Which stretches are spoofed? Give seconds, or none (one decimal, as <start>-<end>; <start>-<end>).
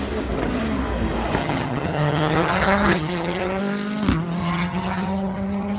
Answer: 1.4-3.6; 4.4-5.8